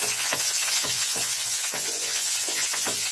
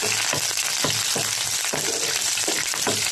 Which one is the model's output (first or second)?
first